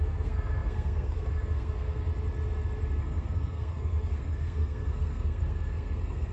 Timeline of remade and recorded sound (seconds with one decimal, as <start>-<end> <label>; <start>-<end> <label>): 0.0-2.1 remade; 2.1-3.0 recorded; 3.0-6.3 remade